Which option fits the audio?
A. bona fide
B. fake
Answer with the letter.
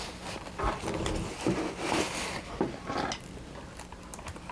A